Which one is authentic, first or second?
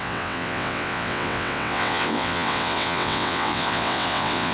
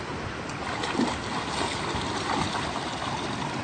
second